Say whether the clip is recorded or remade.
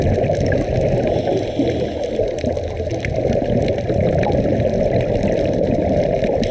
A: recorded